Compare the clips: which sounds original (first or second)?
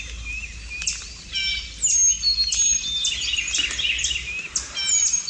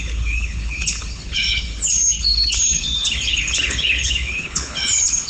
first